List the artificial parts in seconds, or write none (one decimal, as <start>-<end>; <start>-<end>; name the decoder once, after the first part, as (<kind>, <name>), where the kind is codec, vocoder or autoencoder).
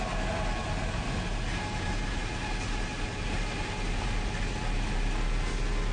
none